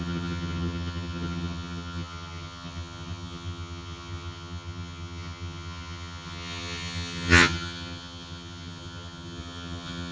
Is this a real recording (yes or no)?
no